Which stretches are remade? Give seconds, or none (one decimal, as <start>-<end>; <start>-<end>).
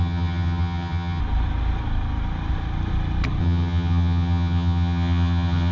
0.0-1.2; 3.4-5.7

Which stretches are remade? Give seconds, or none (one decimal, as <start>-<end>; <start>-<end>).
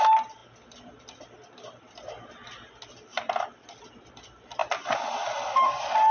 none